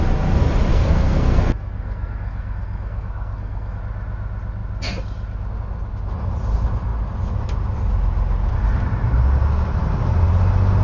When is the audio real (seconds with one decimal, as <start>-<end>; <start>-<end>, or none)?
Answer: 0.0-0.7; 3.8-10.8